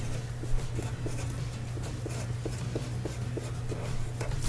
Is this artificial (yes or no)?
no